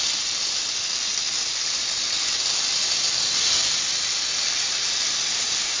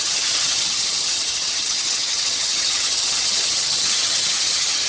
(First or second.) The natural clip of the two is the first